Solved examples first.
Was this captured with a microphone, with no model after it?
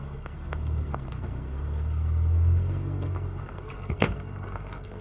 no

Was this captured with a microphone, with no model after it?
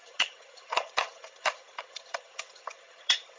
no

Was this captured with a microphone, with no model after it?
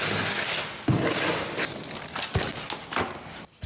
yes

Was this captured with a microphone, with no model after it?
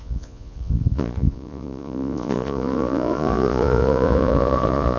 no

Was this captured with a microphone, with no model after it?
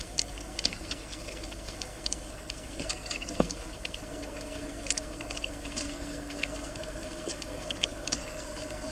no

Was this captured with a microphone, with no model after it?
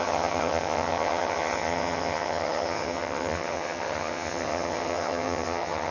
no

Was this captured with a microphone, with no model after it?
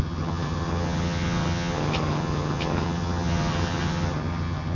no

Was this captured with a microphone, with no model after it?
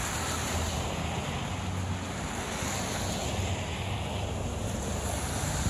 yes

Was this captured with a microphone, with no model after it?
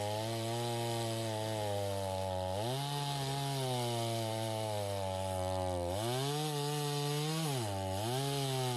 yes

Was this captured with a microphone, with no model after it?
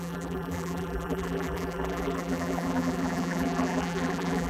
no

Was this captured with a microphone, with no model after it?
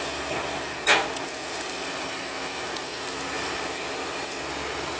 yes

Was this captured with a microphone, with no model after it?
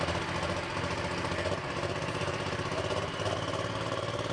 yes